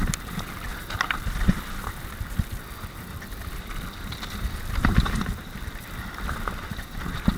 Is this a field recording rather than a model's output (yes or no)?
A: no